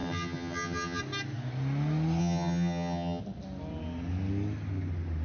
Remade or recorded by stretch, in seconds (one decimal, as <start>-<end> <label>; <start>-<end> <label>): 0.0-1.0 remade; 1.0-2.2 recorded; 2.2-3.2 remade; 3.2-5.2 recorded